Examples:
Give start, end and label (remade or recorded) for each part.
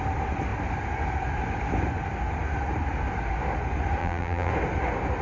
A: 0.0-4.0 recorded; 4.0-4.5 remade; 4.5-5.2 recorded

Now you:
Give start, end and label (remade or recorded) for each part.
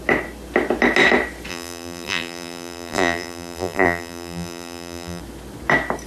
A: 0.0-1.5 recorded; 1.5-5.2 remade; 5.2-6.1 recorded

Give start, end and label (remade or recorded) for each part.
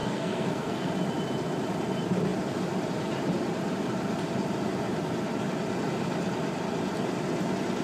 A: 0.0-0.9 remade; 0.9-7.8 recorded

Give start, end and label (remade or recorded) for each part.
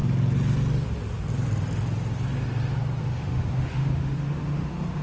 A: 0.0-3.0 recorded; 3.0-5.0 remade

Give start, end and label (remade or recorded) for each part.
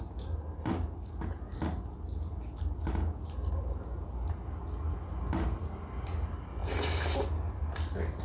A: 0.0-8.2 recorded